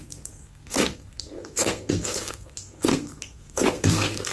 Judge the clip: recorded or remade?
remade